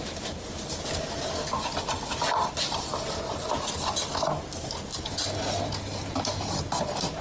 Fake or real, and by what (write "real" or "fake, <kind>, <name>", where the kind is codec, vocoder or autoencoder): real